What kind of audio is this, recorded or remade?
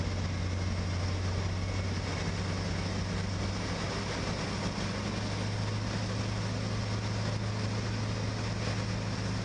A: recorded